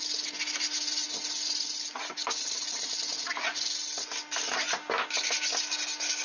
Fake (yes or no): no